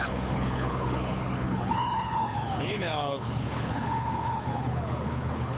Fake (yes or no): yes